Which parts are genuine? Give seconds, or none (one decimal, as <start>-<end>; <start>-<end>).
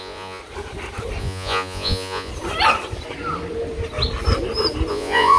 0.4-1.2; 2.3-4.9